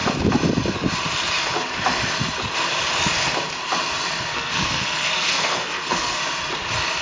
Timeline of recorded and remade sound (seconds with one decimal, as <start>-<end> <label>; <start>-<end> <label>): 0.0-4.3 recorded; 4.3-6.2 remade; 6.2-7.0 recorded